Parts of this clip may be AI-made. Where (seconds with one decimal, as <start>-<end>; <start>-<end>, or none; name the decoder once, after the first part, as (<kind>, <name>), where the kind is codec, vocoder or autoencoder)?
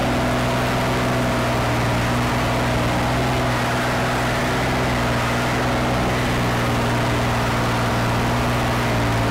none